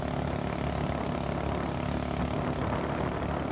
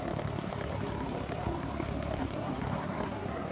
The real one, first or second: first